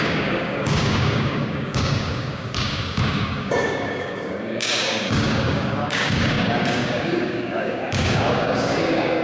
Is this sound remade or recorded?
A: remade